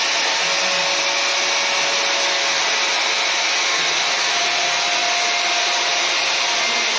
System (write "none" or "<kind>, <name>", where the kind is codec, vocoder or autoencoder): none